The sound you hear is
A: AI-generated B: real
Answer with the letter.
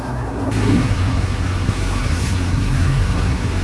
A